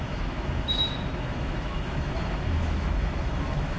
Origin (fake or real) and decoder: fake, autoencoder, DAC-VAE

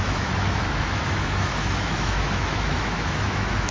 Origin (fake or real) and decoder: fake, autoencoder, DAC-VAE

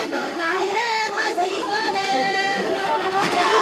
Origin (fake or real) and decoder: fake, autoencoder, DAC-VAE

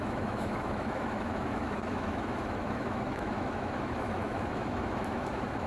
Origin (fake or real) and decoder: fake, autoencoder, DAC-VAE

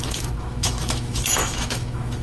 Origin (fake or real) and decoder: fake, autoencoder, DAC-VAE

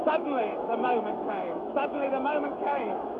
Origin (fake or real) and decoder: fake, autoencoder, DAC-VAE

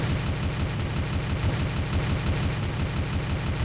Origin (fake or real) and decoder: real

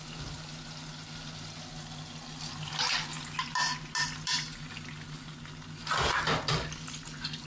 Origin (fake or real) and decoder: real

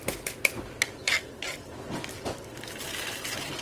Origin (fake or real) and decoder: real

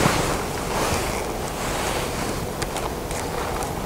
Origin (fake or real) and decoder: real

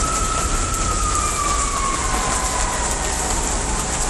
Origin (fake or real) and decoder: real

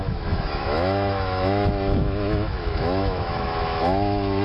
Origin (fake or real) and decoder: fake, autoencoder, DAC-VAE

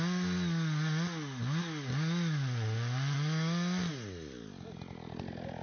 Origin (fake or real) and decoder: real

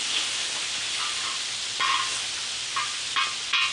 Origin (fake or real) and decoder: real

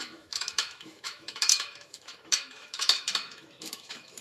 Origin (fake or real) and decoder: fake, autoencoder, DAC-VAE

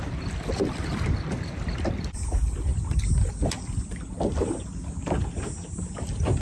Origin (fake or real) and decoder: real